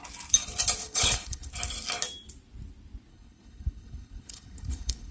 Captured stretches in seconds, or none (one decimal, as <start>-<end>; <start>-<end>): 0.0-0.8; 1.5-3.1